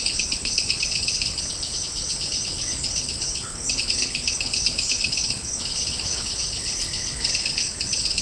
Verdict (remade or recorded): remade